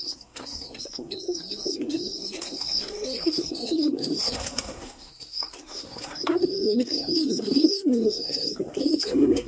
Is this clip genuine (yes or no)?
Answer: no